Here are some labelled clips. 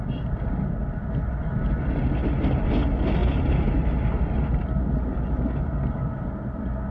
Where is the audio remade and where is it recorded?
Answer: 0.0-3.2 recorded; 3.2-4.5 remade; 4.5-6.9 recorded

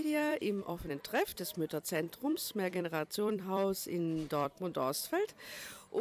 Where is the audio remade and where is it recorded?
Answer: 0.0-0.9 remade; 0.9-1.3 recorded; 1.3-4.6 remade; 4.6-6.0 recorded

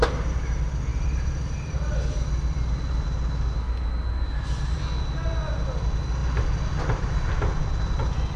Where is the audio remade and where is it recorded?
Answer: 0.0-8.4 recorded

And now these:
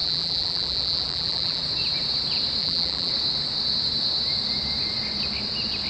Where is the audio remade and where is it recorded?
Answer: 0.0-1.6 remade; 1.6-2.6 recorded; 2.6-3.1 remade; 3.1-5.9 recorded

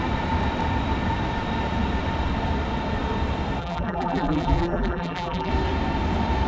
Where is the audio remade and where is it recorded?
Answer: 0.0-3.6 recorded; 3.6-5.5 remade; 5.5-6.5 recorded

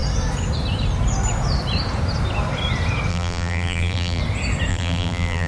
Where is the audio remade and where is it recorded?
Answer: 0.0-3.1 recorded; 3.1-4.2 remade; 4.2-4.7 recorded; 4.7-5.5 remade